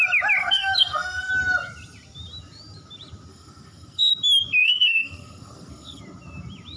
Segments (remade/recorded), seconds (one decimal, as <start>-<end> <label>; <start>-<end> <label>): 0.0-0.4 recorded; 0.4-1.3 remade; 1.3-3.3 recorded; 3.3-4.1 remade; 4.1-4.6 recorded; 4.6-6.0 remade; 6.0-6.8 recorded